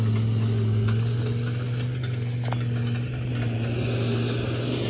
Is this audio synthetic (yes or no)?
no